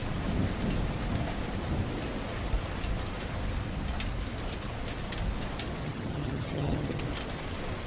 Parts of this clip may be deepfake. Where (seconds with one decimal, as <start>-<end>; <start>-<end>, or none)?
5.8-7.0